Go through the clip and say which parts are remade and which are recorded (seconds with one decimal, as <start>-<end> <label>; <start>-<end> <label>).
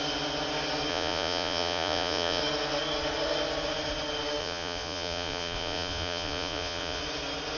0.0-0.9 recorded; 0.9-2.4 remade; 2.4-4.4 recorded; 4.4-7.0 remade; 7.0-7.6 recorded